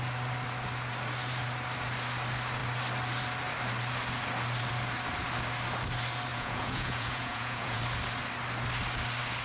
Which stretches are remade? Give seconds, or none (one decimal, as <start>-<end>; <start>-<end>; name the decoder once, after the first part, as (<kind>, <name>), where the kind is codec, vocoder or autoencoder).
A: 6.3-7.8 (vocoder, Vocos)